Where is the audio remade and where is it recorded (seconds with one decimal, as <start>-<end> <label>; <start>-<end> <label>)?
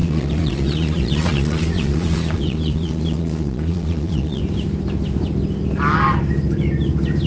0.0-4.4 remade; 4.4-7.3 recorded